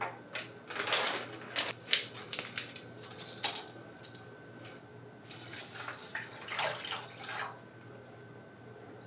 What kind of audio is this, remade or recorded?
recorded